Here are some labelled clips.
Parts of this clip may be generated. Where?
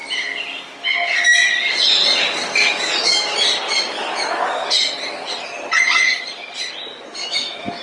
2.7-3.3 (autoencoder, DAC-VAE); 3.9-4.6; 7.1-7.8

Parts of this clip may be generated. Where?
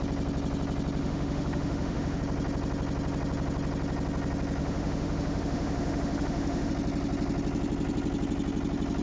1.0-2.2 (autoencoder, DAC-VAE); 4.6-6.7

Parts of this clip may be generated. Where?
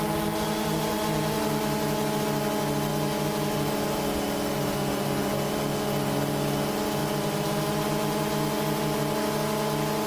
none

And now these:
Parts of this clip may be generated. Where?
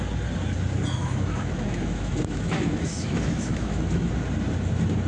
1.0-4.1 (autoencoder, DAC-VAE)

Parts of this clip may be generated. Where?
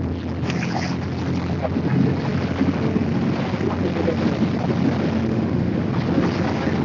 5.3-5.9 (autoencoder, DAC-VAE)